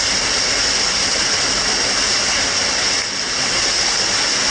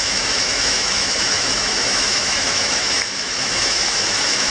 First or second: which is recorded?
first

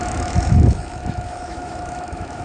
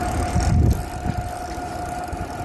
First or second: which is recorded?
second